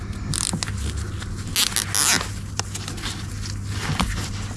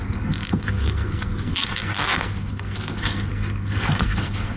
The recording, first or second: first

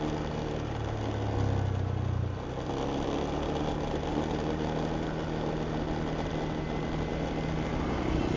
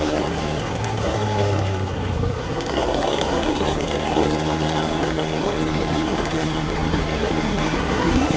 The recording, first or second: first